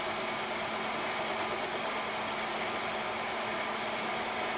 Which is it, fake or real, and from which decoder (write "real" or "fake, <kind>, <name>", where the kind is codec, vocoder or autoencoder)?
real